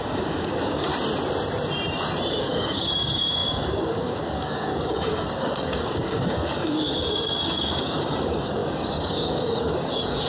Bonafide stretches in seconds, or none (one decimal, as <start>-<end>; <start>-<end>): 0.9-2.3